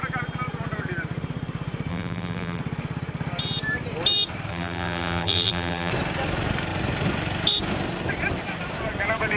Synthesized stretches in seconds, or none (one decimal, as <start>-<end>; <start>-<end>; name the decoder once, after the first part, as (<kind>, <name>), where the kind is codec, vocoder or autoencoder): 1.9-2.6 (vocoder, BigVGAN v2); 4.5-5.9

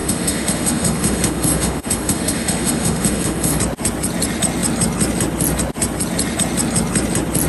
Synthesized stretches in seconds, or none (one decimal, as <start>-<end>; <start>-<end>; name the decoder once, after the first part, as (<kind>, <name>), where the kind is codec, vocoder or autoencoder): 0.0-3.6 (autoencoder, DAC-VAE)

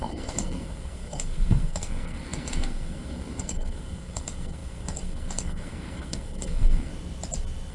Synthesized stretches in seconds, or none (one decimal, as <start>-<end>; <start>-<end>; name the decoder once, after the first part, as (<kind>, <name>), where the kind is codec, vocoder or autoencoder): 0.0-6.9 (codec, SNAC)

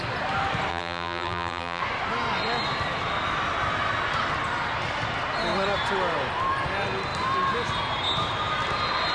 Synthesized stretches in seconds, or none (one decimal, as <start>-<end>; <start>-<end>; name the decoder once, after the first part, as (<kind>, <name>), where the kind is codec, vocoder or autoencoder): 0.7-1.8 (vocoder, BigVGAN v2)

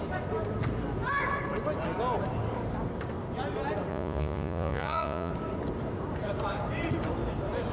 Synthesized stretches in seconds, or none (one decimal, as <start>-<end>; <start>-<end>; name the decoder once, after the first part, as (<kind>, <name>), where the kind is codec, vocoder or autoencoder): 3.9-5.3 (vocoder, Vocos)

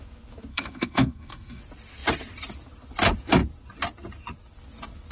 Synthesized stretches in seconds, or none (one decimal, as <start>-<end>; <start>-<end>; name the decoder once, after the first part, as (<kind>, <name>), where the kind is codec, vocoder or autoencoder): 0.5-1.6 (codec, SNAC)